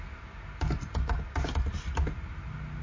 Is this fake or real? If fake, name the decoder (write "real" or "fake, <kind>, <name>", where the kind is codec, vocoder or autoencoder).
real